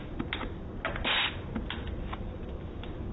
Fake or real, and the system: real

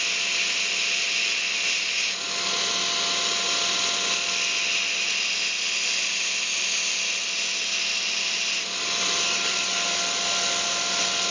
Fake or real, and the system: real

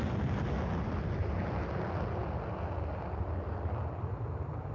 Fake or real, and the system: real